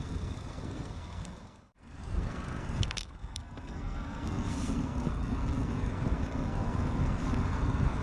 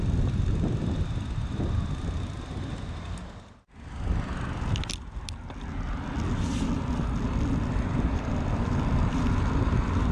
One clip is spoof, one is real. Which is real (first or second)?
second